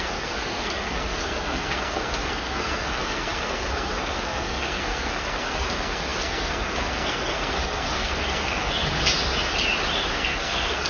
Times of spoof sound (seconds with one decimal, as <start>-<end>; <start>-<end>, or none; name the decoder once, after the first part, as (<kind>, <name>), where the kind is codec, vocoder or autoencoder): 0.0-8.8 (codec, SNAC); 10.1-10.9